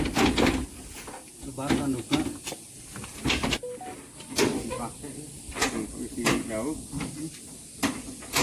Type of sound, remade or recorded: recorded